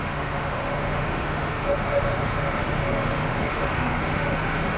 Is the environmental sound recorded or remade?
remade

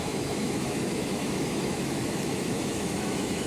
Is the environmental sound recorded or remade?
remade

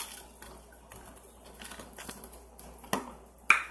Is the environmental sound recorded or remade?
recorded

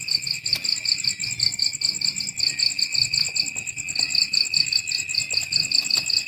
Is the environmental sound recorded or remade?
recorded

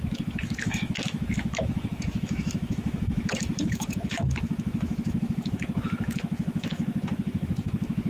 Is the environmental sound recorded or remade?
remade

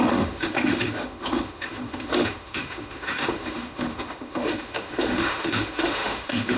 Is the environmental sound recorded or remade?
remade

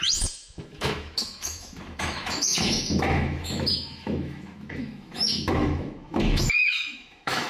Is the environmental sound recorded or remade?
remade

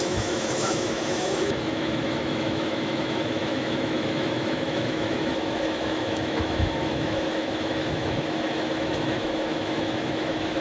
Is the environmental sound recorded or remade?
remade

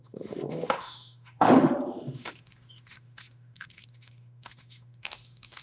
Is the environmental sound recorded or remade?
remade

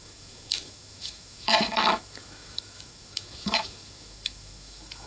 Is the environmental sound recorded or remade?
remade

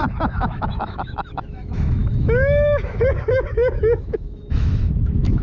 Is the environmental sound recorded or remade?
remade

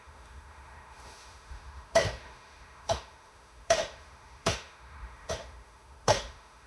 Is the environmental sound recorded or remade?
remade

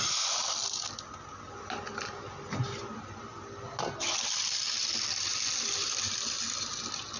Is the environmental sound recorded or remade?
recorded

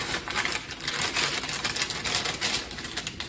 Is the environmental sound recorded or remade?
recorded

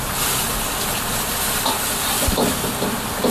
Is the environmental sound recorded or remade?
recorded